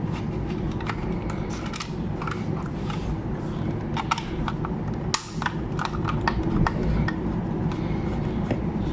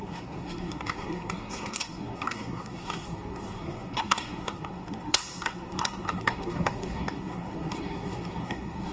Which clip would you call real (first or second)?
first